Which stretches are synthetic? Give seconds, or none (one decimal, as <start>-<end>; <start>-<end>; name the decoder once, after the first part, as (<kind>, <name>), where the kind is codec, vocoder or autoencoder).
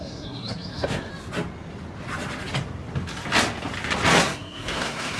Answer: 0.0-1.1 (codec, SNAC); 4.2-5.2